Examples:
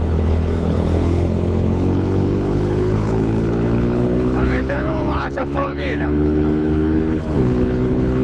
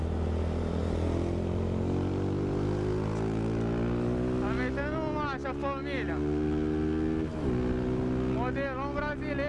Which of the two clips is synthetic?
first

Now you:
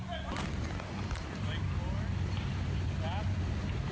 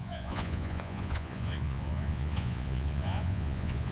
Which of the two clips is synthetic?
second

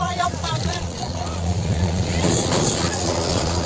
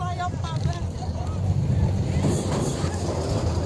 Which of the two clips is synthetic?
first